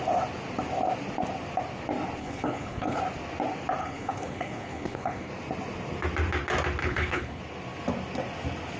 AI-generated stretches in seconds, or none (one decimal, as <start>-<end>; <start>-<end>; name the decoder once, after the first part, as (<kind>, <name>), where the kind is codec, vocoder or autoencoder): 2.2-3.0 (codec, HILCodec); 3.8-5.3; 6.8-7.4